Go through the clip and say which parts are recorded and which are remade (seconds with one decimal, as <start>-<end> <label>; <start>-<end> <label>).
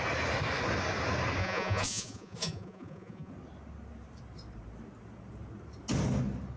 0.0-1.4 recorded; 1.4-3.3 remade; 3.3-6.6 recorded